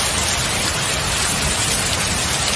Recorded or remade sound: recorded